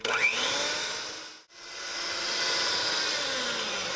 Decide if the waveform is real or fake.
real